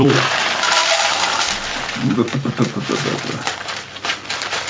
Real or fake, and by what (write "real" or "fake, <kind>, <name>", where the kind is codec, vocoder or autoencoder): fake, vocoder, BigVGAN v2